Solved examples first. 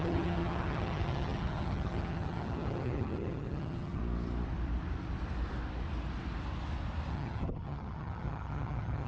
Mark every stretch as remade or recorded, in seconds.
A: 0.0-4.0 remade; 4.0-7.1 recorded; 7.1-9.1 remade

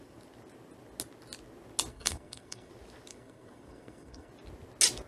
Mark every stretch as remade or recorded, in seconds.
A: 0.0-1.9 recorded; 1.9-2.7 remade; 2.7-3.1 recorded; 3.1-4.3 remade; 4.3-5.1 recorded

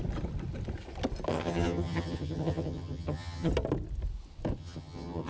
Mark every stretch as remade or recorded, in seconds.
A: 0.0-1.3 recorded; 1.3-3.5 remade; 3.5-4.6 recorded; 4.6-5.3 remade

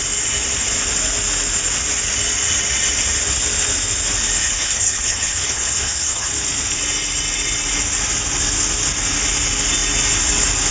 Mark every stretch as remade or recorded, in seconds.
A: 0.0-4.4 recorded; 4.4-6.3 remade; 6.3-10.7 recorded

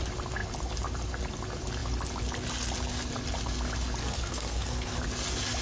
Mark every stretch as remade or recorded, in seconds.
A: 0.0-4.0 recorded; 4.0-5.0 remade; 5.0-5.6 recorded

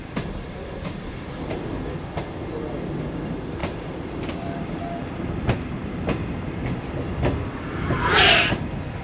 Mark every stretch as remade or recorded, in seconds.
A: 0.0-3.6 recorded; 3.6-4.8 remade; 4.8-9.0 recorded

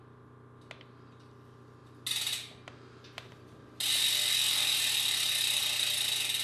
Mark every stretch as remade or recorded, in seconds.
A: 0.0-6.4 recorded

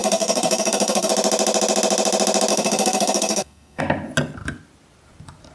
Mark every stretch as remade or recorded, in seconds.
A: 0.0-1.1 remade; 1.1-2.5 recorded; 2.5-3.8 remade; 3.8-5.5 recorded